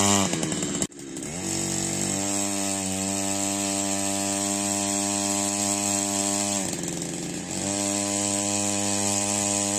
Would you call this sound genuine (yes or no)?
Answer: yes